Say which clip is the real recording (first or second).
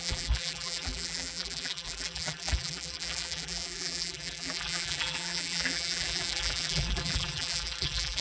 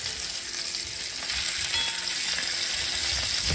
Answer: second